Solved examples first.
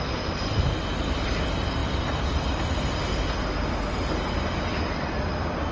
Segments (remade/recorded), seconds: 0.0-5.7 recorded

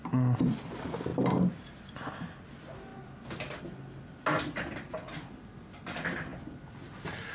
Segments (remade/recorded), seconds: 0.0-7.3 recorded

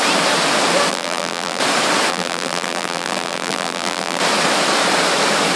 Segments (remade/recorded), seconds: 0.0-0.9 recorded; 0.9-1.6 remade; 1.6-2.1 recorded; 2.1-4.2 remade; 4.2-5.6 recorded